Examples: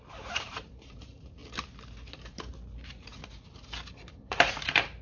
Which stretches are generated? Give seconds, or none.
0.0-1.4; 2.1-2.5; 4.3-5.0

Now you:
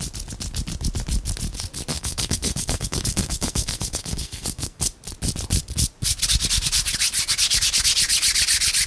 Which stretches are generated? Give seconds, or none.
1.9-4.8